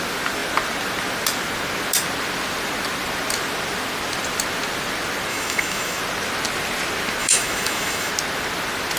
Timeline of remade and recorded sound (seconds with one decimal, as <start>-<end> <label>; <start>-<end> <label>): 0.0-5.3 recorded; 5.3-6.0 remade; 6.0-7.2 recorded; 7.2-8.1 remade; 8.1-9.0 recorded